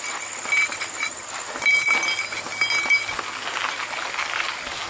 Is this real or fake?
real